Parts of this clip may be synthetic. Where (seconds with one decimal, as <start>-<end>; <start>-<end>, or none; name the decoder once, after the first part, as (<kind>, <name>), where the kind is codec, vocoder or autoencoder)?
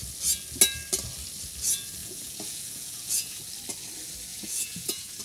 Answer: 2.0-3.4 (vocoder, Vocos); 4.3-5.2